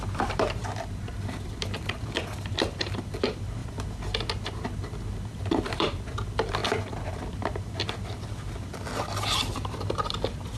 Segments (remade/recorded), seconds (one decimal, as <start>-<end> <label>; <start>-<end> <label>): 0.0-3.6 remade; 3.6-5.5 recorded; 5.5-6.6 remade; 6.6-7.1 recorded; 7.1-10.6 remade